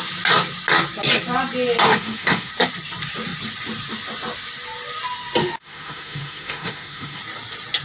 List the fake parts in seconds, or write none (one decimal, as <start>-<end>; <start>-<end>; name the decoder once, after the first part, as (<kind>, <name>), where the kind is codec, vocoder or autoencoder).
1.9-2.5 (autoencoder, DAC-VAE); 5.4-7.2